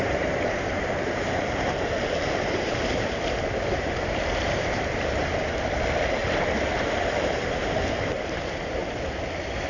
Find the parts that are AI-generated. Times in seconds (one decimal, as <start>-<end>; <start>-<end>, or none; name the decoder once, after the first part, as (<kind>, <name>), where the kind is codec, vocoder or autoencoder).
0.0-8.8 (vocoder, BigVGAN v2)